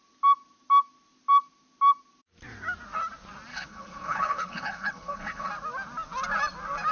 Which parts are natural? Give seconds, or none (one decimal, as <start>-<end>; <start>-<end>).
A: 0.0-3.5; 5.5-6.9